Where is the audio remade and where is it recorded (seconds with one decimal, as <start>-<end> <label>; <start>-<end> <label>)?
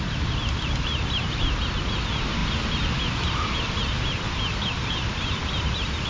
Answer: 0.0-6.1 recorded